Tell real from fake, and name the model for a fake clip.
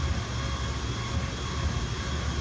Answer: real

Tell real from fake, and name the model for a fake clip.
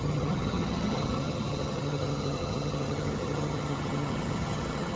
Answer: fake, vocoder, HiFi-GAN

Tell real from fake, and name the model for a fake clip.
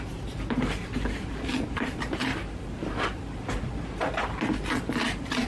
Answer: fake, vocoder, BigVGAN v2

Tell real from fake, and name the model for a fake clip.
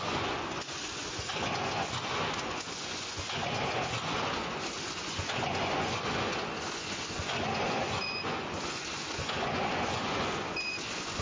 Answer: fake, vocoder, Vocos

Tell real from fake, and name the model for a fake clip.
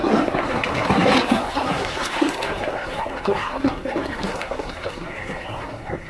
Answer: fake, codec, SNAC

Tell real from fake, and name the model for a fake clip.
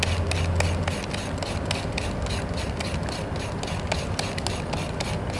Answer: real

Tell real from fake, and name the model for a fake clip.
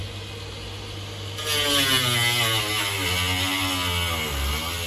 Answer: real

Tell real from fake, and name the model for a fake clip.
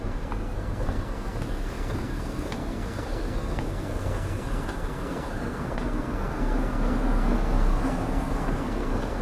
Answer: fake, codec, SNAC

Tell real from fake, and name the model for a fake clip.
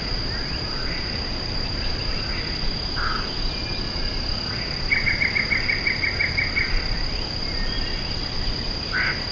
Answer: real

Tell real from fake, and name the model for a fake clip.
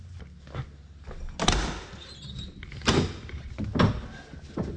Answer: real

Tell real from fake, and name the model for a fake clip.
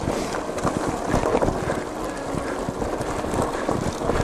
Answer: real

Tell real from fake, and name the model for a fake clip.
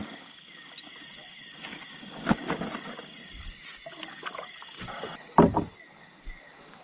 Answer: real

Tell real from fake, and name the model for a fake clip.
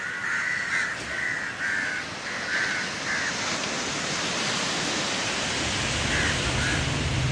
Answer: real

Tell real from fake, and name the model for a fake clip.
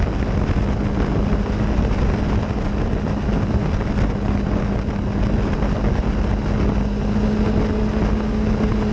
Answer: real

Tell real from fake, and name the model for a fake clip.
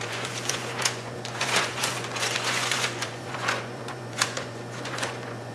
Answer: fake, vocoder, Vocos